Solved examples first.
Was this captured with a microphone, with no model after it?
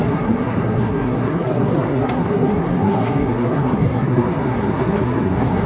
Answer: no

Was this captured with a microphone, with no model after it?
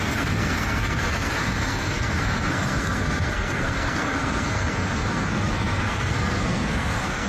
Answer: no